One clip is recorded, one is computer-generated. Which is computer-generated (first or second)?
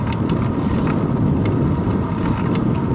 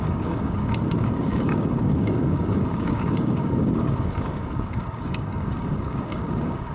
second